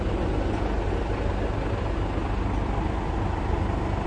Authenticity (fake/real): real